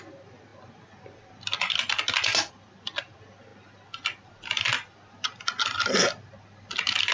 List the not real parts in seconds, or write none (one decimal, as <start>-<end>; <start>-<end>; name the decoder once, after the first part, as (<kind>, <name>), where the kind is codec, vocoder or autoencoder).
none